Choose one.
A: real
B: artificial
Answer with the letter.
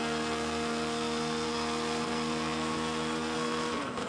B